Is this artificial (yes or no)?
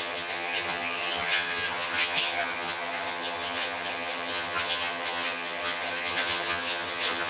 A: yes